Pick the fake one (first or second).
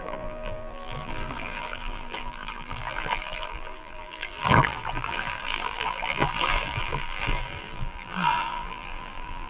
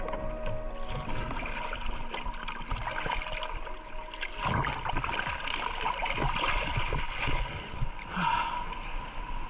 first